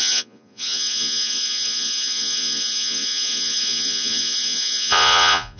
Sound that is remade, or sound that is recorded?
remade